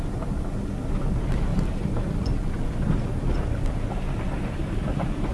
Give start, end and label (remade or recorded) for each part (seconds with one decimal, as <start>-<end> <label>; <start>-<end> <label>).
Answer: 0.0-5.3 recorded